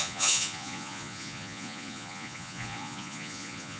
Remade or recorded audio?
remade